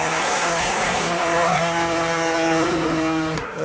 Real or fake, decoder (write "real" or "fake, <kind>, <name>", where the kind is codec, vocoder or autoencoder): fake, codec, SNAC